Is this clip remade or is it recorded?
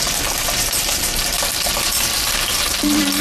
remade